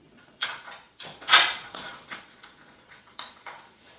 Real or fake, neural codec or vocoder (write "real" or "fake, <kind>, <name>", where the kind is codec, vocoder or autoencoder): fake, vocoder, Vocos